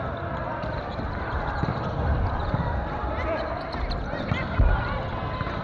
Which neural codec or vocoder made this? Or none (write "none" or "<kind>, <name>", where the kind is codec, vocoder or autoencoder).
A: none